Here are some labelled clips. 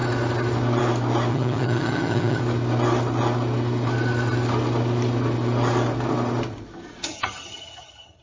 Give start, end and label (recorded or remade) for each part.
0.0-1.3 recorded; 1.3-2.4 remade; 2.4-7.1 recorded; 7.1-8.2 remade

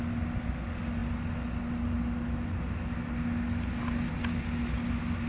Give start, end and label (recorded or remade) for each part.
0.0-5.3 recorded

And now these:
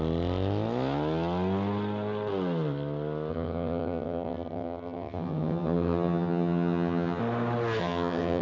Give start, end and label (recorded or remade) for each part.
0.0-3.3 recorded; 3.3-7.2 remade; 7.2-7.8 recorded; 7.8-8.4 remade